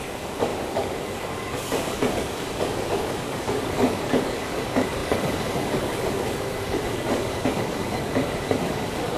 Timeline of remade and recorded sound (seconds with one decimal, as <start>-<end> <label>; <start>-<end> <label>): 0.0-9.2 remade